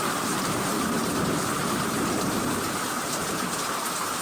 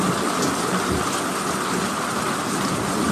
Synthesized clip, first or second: first